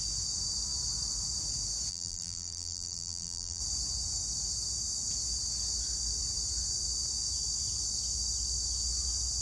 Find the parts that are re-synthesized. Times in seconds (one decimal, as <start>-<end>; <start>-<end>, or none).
1.9-3.6